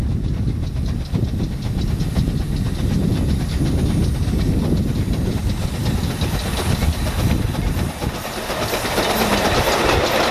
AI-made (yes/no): no